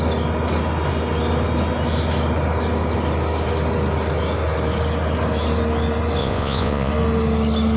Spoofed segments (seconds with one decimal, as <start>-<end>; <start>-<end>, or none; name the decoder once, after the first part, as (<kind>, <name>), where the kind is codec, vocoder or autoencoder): 6.2-6.9 (vocoder, Vocos)